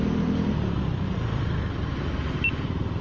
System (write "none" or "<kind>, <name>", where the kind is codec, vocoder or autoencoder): none